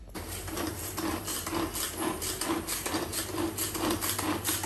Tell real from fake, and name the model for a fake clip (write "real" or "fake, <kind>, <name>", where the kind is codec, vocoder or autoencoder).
real